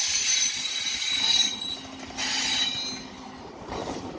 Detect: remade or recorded recorded